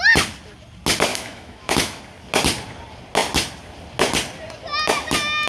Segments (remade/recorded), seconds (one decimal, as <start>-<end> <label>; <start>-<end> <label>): 0.0-1.1 recorded; 1.1-2.0 remade; 2.0-5.5 recorded